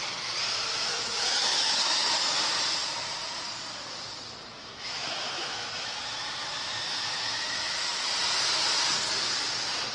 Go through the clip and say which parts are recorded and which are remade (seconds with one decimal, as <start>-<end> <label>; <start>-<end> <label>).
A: 0.0-0.9 recorded; 0.9-2.1 remade; 2.1-4.6 recorded; 4.6-8.1 remade; 8.1-9.9 recorded